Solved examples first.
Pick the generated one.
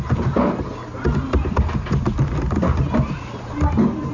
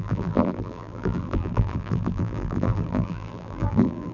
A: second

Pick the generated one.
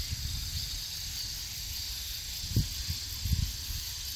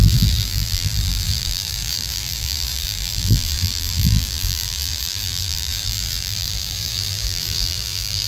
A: second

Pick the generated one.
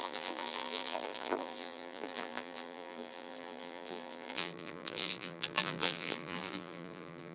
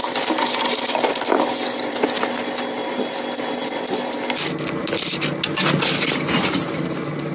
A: first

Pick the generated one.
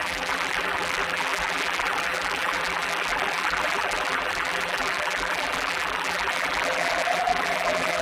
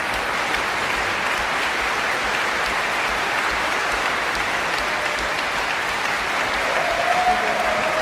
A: first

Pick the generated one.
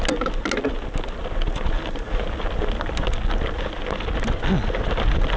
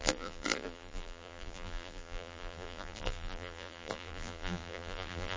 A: second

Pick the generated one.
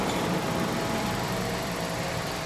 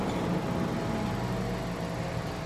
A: first